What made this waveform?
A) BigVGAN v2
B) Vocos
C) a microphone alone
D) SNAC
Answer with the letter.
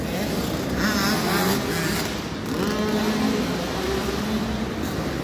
C